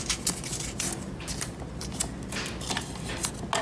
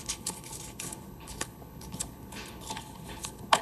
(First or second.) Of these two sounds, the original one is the first